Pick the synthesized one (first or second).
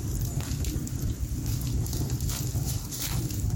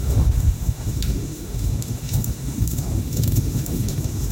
second